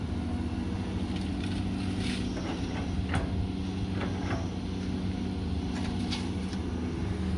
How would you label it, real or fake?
real